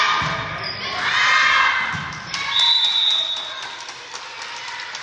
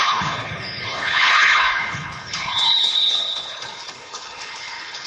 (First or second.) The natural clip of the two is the first